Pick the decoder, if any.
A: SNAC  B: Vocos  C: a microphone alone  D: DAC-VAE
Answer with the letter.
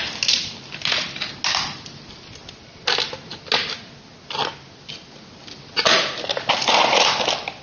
C